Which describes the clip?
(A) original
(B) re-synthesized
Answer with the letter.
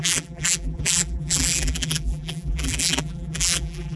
B